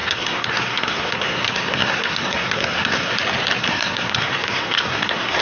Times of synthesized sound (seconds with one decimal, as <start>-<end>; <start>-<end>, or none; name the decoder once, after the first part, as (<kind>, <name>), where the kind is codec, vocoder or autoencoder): 0.0-3.2 (codec, SNAC); 3.6-5.4

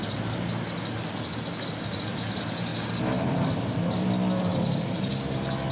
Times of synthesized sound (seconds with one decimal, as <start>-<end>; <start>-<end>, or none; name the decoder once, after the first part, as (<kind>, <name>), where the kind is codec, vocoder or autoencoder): none

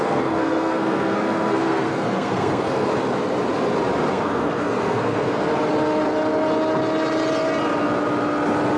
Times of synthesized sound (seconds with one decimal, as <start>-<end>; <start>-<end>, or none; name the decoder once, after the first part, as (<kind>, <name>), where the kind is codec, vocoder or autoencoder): 0.0-2.9 (codec, SNAC); 4.1-5.5

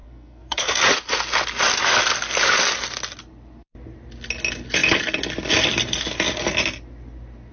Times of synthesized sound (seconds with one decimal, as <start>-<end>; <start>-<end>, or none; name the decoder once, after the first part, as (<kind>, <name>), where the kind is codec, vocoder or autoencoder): 0.0-0.8 (codec, SNAC)

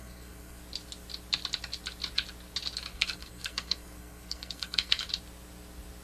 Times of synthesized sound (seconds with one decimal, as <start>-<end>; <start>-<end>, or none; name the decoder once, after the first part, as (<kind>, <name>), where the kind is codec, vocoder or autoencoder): 0.0-0.6 (codec, SNAC); 2.9-5.1

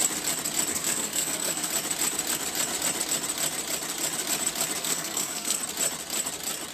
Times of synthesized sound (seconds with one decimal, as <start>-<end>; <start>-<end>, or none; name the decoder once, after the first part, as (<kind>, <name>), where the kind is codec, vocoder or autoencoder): 0.7-1.7 (codec, SNAC); 4.8-5.6

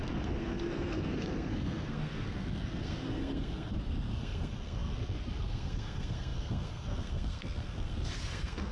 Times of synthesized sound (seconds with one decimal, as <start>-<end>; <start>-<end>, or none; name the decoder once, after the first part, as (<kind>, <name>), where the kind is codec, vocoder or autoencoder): 0.0-8.7 (codec, SNAC)